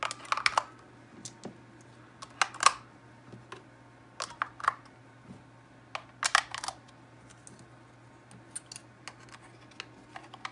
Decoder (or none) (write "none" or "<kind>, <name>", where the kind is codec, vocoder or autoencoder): none